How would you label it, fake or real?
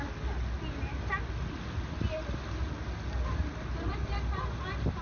real